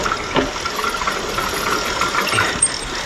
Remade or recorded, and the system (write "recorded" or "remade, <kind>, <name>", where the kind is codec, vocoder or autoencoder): recorded